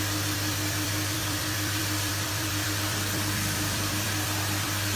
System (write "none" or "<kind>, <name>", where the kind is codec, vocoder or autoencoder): vocoder, BigVGAN v2